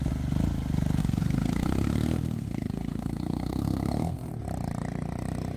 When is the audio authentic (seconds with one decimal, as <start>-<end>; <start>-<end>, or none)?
0.0-1.0; 4.3-5.6